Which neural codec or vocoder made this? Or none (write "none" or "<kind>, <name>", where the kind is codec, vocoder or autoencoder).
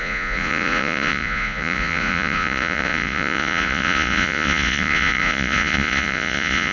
vocoder, Vocos